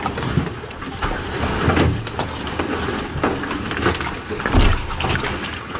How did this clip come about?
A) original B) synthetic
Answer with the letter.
A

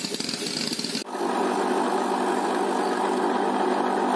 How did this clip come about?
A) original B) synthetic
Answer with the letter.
A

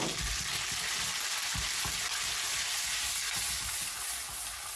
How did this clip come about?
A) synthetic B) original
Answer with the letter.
B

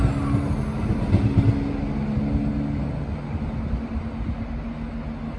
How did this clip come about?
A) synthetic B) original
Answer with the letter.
B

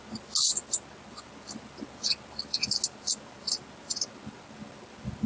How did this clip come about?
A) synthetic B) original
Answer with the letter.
B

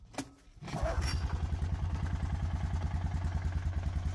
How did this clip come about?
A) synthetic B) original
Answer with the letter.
B